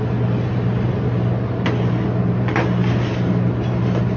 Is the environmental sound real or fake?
real